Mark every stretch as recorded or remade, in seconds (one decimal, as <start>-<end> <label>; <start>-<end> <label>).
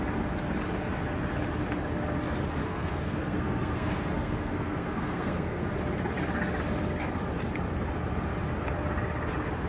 0.0-2.6 recorded; 2.6-5.7 remade; 5.7-9.7 recorded